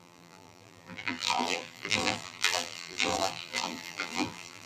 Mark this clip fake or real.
fake